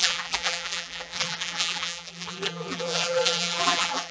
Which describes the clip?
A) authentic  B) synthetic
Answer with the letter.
B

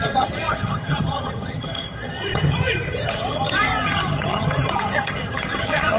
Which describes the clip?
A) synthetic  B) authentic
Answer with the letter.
A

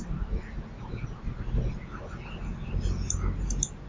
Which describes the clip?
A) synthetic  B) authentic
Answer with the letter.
B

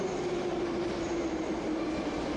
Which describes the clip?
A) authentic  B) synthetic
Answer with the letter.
A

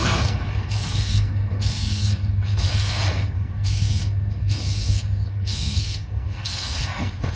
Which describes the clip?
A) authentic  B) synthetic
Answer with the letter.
B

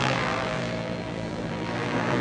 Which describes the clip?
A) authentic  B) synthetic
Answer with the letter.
B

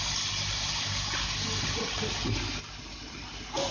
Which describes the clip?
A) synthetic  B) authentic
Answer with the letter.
B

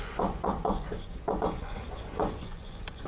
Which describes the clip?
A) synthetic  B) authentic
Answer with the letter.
A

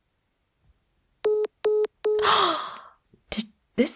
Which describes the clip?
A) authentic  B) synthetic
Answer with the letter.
A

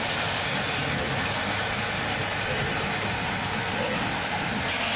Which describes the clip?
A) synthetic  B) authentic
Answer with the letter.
B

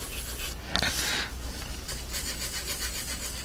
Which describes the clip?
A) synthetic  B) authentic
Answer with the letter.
B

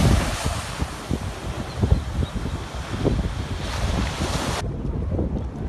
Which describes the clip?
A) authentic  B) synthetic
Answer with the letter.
A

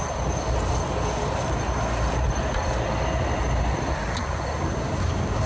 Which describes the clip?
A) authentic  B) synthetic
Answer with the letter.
A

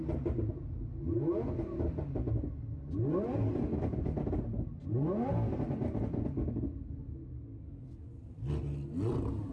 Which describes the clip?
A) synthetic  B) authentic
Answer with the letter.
B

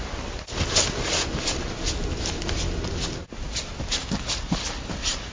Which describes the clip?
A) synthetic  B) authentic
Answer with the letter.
B